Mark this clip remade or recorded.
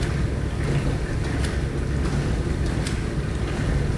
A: recorded